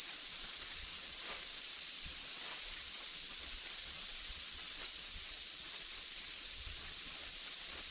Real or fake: fake